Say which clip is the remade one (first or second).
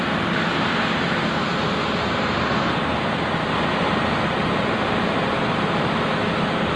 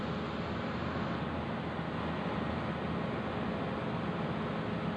first